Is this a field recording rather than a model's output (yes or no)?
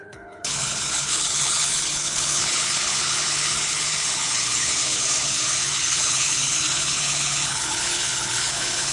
no